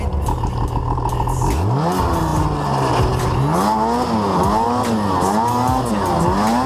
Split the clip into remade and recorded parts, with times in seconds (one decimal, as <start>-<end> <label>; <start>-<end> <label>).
0.0-6.7 recorded